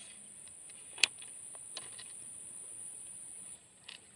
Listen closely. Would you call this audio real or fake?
fake